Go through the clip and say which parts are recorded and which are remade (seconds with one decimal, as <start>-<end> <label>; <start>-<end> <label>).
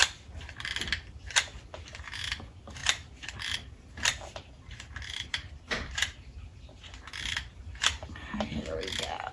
0.0-2.8 recorded; 2.8-3.4 remade; 3.4-4.1 recorded; 4.1-7.6 remade; 7.6-9.3 recorded